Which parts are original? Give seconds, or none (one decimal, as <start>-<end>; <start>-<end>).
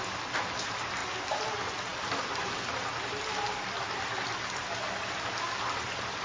0.0-6.2